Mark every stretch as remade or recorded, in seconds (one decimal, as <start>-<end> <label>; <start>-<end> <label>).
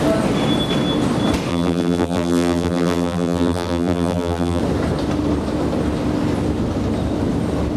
0.0-1.5 recorded; 1.5-4.6 remade; 4.6-7.8 recorded